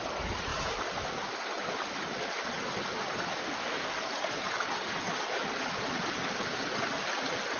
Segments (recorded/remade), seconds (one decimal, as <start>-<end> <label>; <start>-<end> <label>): 0.0-3.4 recorded; 3.4-4.1 remade; 4.1-7.6 recorded